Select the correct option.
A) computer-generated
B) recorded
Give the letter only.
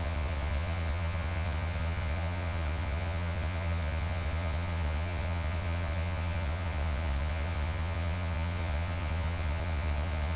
A